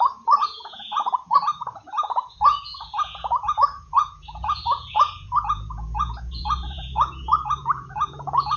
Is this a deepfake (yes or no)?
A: yes